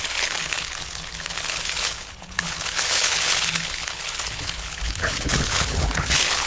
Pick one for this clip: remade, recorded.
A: remade